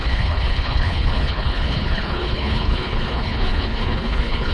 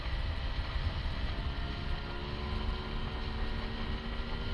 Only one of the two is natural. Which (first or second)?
second